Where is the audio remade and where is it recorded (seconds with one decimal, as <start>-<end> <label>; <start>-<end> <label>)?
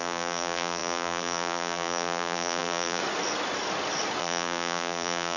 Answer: 0.0-3.0 remade; 3.0-4.2 recorded; 4.2-5.4 remade